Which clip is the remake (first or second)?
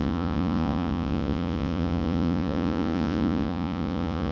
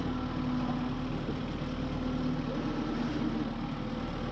first